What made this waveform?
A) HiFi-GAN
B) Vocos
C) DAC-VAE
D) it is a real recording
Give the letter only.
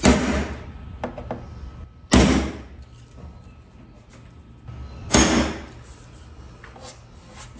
D